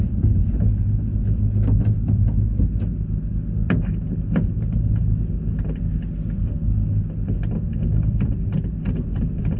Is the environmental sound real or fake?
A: real